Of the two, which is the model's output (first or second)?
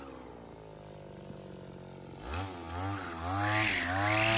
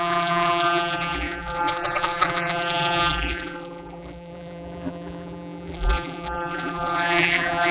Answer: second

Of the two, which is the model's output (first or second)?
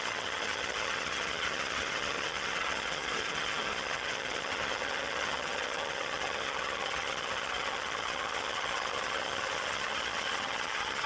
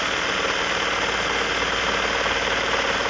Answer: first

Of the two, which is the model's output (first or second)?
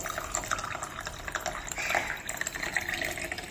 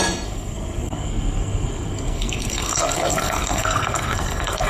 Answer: second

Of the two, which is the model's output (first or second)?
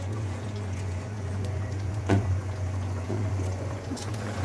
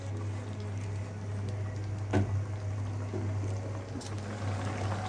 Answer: first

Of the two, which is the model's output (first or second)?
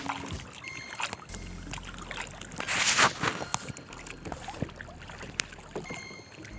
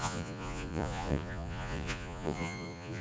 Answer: second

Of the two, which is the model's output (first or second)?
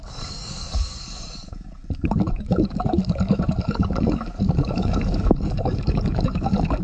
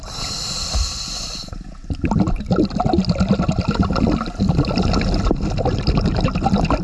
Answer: first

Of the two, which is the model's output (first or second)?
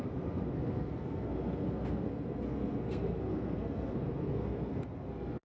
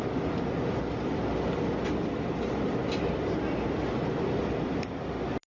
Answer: first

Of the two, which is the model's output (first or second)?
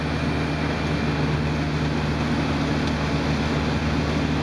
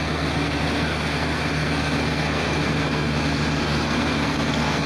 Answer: second